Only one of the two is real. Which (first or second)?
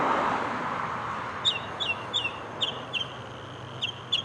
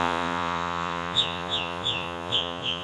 first